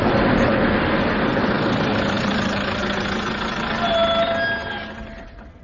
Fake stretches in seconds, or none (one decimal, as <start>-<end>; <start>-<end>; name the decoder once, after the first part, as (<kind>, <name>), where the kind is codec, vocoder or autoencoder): none